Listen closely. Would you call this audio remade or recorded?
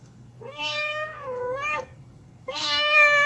remade